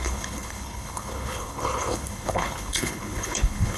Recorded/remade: remade